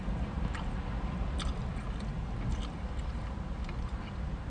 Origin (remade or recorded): recorded